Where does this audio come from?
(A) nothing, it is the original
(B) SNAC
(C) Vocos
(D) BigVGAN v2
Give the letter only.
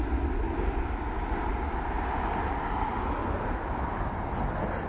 A